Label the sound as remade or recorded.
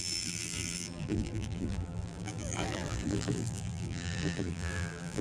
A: remade